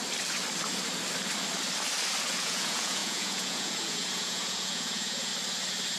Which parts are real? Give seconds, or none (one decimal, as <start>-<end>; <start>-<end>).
0.0-2.3; 5.3-6.0